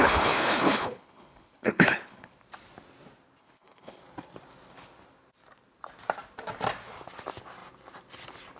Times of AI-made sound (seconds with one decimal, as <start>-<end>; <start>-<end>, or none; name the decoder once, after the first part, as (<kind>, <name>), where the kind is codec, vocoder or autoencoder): 0.0-2.3 (codec, HILCodec); 3.4-4.0